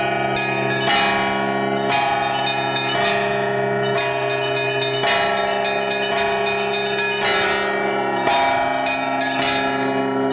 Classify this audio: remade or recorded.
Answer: recorded